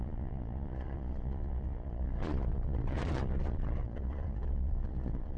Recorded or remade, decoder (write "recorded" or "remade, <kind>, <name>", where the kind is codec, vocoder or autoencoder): remade, vocoder, Vocos